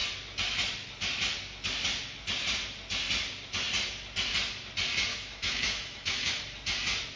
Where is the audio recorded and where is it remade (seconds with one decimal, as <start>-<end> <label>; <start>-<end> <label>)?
0.0-5.1 recorded; 5.1-6.3 remade; 6.3-7.2 recorded